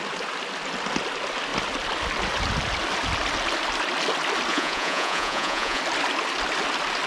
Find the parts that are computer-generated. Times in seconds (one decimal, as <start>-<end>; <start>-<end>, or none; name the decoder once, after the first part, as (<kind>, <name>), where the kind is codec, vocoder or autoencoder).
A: 4.5-5.8 (vocoder, Vocos)